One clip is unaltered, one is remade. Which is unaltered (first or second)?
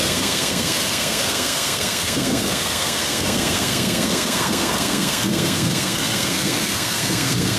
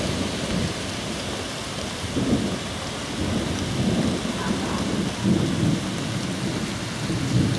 second